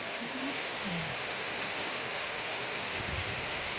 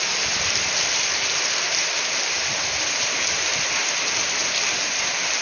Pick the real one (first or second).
second